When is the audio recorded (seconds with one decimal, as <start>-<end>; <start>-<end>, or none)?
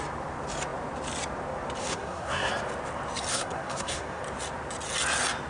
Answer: 0.0-1.8; 2.5-3.3; 4.2-5.5